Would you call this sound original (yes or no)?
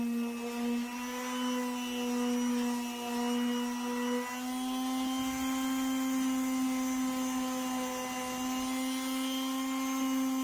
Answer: yes